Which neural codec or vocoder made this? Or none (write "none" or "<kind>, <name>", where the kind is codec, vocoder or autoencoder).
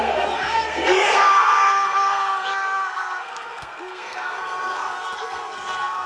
codec, SNAC